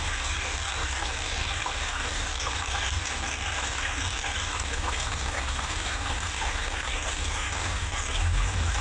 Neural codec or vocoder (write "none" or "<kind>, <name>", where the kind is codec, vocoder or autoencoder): codec, DAC